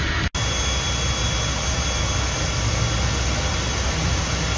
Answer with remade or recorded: recorded